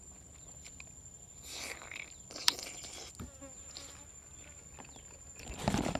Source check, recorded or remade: recorded